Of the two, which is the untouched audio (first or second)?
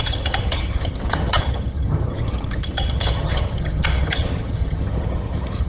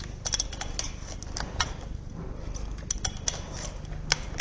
second